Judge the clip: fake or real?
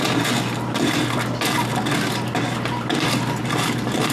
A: real